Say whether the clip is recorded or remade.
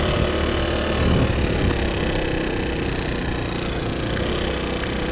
recorded